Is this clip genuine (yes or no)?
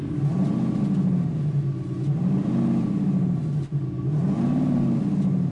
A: yes